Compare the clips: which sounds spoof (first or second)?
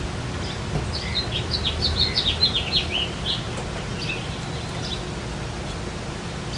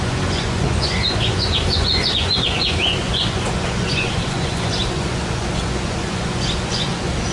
second